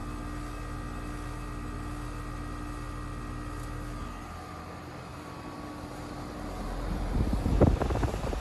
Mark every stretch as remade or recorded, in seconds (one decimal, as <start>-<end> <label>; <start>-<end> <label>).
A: 0.0-4.6 recorded; 4.6-5.1 remade; 5.1-6.3 recorded; 6.3-8.4 remade